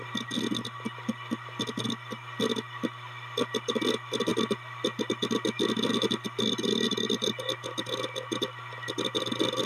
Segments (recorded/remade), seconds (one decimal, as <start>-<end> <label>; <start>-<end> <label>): 0.0-9.7 recorded